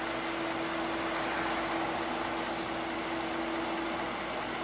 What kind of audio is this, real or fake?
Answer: real